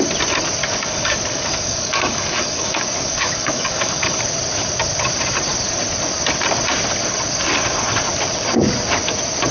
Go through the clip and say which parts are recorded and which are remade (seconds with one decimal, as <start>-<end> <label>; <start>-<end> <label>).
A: 0.0-0.6 recorded; 0.6-4.2 remade; 4.2-9.5 recorded